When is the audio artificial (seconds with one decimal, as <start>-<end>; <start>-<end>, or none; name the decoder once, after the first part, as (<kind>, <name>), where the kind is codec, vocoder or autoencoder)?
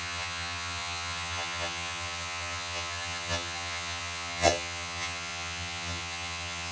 0.0-6.7 (vocoder, HiFi-GAN)